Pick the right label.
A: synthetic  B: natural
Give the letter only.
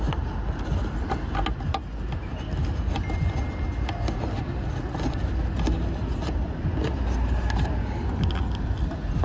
B